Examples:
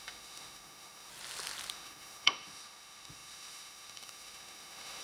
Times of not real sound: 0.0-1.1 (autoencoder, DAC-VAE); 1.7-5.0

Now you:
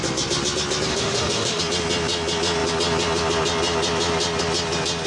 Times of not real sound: 0.9-1.6 (autoencoder, DAC-VAE)

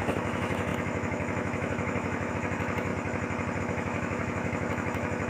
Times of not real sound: 0.0-2.9 (autoencoder, DAC-VAE); 3.6-5.3

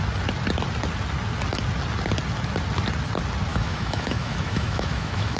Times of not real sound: 3.5-5.4 (autoencoder, DAC-VAE)